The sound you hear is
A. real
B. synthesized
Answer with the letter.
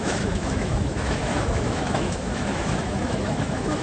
B